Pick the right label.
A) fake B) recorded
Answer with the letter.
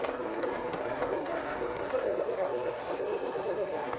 A